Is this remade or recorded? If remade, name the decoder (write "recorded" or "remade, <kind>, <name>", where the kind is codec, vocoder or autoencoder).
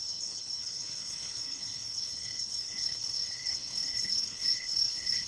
remade, codec, HILCodec